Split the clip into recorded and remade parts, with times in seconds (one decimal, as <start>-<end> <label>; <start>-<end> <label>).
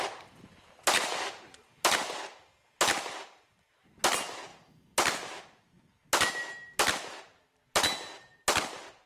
0.0-9.1 recorded